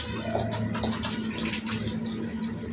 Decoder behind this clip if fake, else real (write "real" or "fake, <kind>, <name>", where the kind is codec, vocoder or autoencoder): real